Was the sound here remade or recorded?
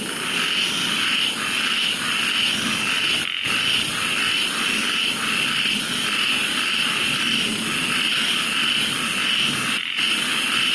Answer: recorded